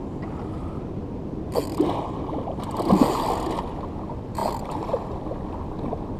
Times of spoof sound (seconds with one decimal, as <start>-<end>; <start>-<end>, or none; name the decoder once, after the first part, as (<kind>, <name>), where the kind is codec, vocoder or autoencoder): none